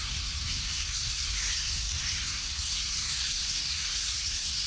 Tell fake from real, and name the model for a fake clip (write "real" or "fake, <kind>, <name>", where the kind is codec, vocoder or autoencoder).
fake, codec, SNAC